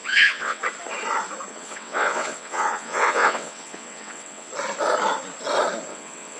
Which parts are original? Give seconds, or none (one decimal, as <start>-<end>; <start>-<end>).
0.6-1.5; 4.5-5.9